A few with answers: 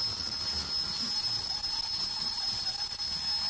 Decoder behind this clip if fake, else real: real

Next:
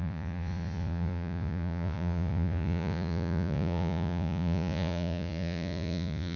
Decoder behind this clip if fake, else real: fake, vocoder, Vocos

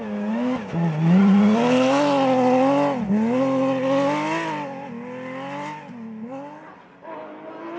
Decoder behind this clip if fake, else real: real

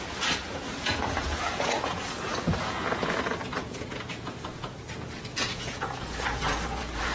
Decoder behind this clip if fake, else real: fake, vocoder, Vocos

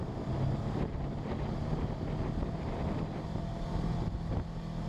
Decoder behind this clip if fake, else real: real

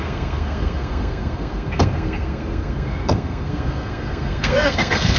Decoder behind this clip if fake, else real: fake, codec, SNAC